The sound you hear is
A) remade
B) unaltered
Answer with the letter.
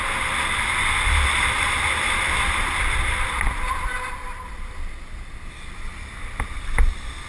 B